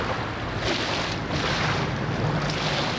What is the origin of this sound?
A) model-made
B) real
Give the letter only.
B